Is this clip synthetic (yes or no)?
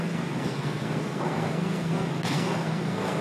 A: yes